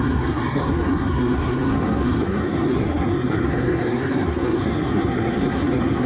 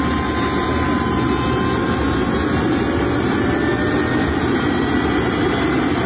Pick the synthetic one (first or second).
first